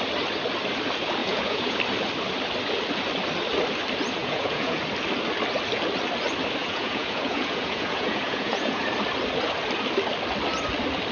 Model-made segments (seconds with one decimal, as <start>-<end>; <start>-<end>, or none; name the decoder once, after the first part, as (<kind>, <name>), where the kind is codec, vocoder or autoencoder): 1.2-1.8 (vocoder, Vocos); 4.2-4.8; 6.6-8.8